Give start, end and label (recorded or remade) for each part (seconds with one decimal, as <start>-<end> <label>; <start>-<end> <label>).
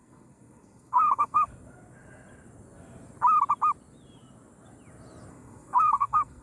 0.0-1.5 remade; 1.5-5.3 recorded; 5.3-6.4 remade